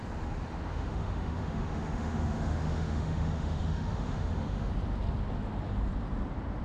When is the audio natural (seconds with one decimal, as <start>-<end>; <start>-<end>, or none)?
0.0-0.7; 4.7-6.6

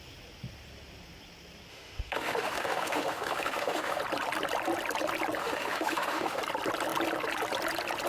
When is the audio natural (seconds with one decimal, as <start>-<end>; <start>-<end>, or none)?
0.0-1.7; 4.0-5.4; 6.4-8.1

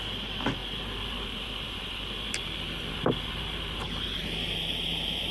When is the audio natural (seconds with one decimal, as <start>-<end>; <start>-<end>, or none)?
0.0-5.3

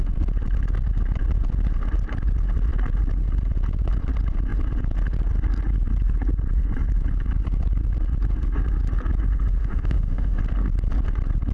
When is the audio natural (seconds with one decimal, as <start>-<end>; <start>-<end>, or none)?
0.0-9.6; 10.4-11.5